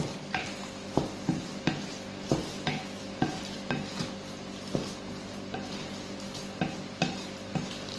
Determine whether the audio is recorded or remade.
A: recorded